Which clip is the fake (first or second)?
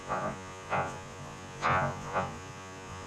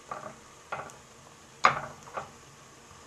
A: first